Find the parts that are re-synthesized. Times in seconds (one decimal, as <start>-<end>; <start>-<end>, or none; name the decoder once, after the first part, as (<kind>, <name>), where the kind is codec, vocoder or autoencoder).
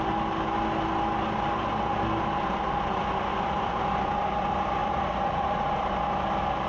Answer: 3.3-3.8 (vocoder, Vocos); 4.8-5.6